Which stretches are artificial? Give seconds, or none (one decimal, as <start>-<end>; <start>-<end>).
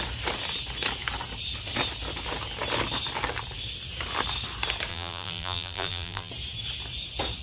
4.9-6.3